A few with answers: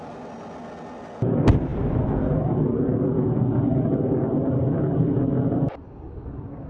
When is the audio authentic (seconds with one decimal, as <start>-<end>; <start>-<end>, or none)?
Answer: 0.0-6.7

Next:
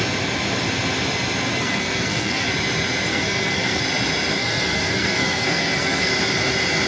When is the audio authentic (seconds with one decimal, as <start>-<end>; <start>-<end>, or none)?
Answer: 0.0-1.6; 2.5-3.1; 3.8-4.4; 6.1-6.9

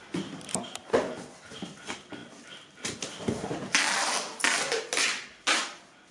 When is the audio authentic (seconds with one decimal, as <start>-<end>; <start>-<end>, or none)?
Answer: 0.0-6.1

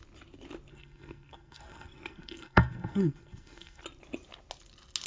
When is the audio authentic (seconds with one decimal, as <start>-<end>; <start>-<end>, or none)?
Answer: 0.0-0.7; 3.8-5.1